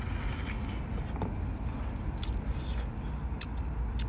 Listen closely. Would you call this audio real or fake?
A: real